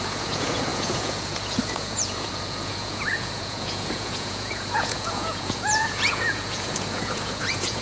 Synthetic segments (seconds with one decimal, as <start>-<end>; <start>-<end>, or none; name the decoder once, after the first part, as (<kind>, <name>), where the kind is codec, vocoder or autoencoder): 0.0-7.8 (vocoder, Vocos)